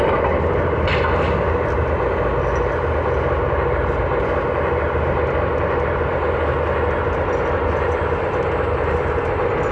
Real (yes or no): yes